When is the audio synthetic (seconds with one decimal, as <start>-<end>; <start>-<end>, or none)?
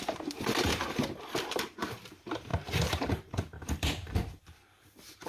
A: 0.0-0.7; 1.4-5.3